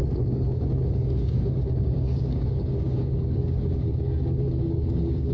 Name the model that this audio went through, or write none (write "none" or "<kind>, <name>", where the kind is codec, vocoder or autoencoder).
codec, DAC